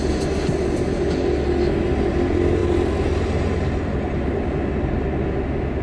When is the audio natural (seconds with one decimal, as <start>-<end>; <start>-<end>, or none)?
0.0-5.8